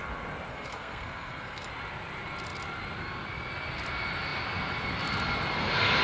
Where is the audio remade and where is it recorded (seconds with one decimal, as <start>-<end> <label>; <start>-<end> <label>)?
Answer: 0.0-0.5 recorded; 0.5-1.7 remade; 1.7-6.0 recorded